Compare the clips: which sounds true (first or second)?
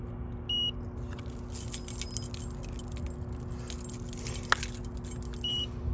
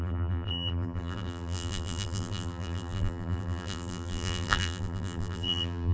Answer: first